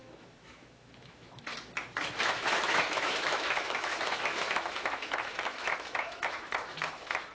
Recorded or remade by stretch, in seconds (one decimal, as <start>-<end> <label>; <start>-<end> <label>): 0.0-1.5 remade; 1.5-2.2 recorded; 2.2-7.3 remade